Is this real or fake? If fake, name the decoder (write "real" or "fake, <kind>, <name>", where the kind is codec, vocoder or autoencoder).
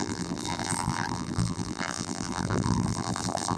fake, vocoder, BigVGAN v2